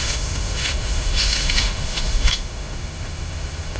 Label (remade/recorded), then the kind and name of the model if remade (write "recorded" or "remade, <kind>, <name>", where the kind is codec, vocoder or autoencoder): remade, autoencoder, DAC-VAE